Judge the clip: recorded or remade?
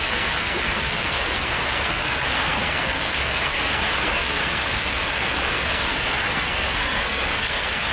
remade